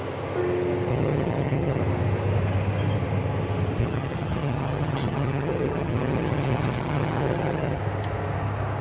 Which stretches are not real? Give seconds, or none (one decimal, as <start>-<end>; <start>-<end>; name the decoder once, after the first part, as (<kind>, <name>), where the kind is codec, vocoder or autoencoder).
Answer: 0.9-1.8 (vocoder, HiFi-GAN); 3.8-7.8